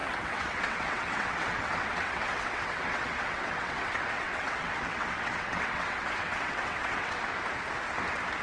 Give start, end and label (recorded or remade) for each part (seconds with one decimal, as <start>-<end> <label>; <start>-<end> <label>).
0.0-7.2 remade; 7.2-8.4 recorded